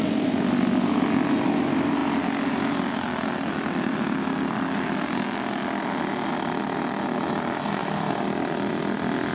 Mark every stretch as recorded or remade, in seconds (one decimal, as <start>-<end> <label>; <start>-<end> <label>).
0.0-9.3 recorded